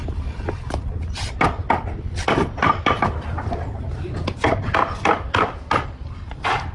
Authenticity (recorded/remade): recorded